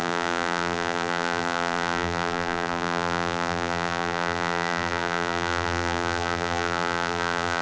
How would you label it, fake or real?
fake